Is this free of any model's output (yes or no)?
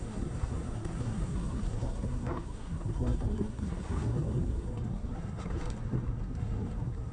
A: no